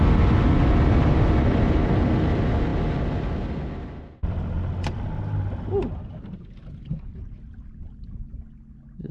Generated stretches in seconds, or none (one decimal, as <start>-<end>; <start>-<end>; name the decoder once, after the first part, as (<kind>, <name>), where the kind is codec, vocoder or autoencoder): none